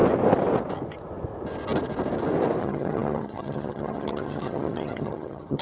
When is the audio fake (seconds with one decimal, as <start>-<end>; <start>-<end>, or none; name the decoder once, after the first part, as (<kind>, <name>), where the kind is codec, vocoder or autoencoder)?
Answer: 2.6-5.6 (vocoder, HiFi-GAN)